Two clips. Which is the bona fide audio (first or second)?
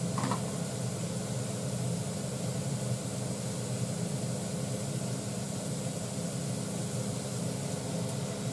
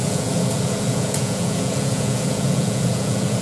first